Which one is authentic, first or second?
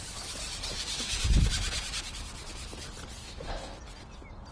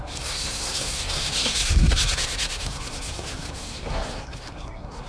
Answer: first